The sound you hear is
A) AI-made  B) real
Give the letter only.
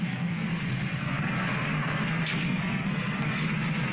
A